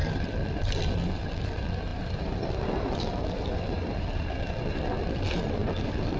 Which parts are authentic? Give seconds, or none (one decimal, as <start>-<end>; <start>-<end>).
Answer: 0.6-1.9; 5.1-6.2